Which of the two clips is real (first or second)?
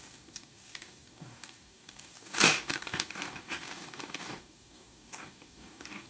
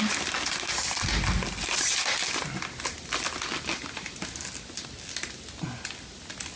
second